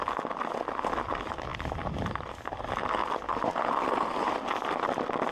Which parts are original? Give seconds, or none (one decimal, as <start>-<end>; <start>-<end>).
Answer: 0.0-5.3